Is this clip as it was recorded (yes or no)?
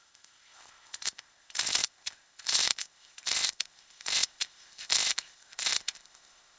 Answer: no